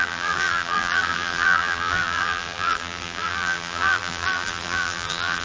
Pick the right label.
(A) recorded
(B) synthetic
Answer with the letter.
B